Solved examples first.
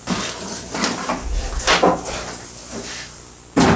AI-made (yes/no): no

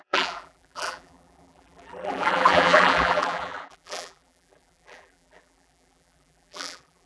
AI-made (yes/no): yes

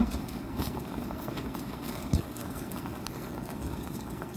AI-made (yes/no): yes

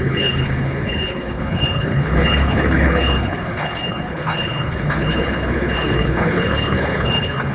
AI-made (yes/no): yes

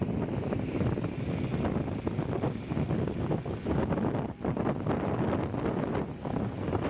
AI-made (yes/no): no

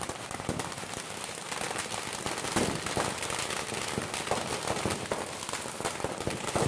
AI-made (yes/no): no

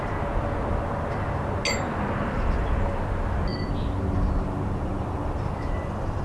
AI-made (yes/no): no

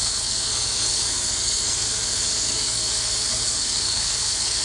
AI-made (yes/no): yes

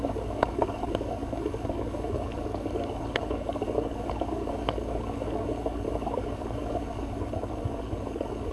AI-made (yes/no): yes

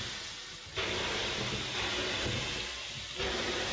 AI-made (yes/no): no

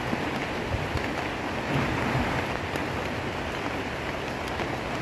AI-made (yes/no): no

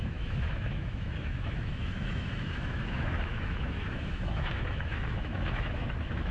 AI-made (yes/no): yes